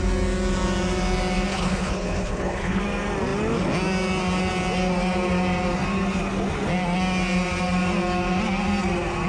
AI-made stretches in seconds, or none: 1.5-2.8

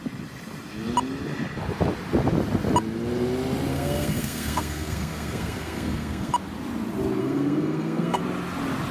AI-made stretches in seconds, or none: 3.7-6.3; 7.2-8.2

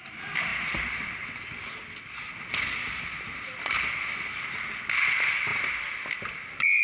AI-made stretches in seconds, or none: none

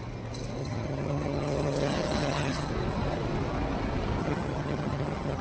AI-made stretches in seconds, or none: 0.6-2.7; 4.2-5.4

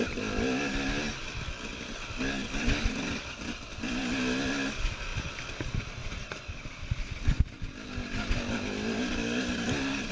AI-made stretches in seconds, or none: none

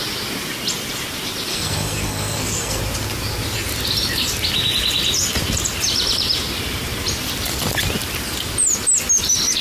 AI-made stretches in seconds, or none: 1.5-2.8